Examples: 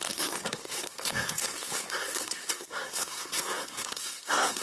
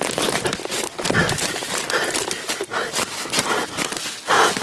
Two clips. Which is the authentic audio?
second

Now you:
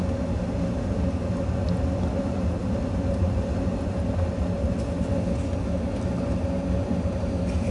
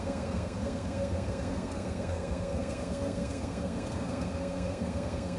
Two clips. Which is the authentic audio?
first